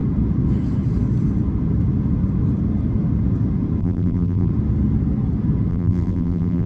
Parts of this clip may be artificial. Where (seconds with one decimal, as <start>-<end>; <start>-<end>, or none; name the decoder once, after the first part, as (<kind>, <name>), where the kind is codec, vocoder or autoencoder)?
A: 3.8-4.5 (vocoder, BigVGAN v2); 5.7-6.7